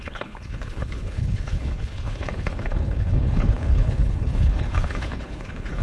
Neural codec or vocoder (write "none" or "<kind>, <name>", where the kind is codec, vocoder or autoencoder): codec, HILCodec